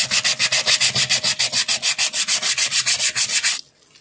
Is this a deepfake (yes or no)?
no